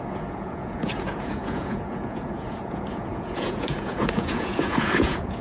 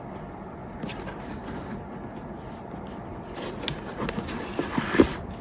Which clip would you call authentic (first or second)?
second